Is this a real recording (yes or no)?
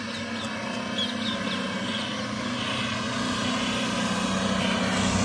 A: yes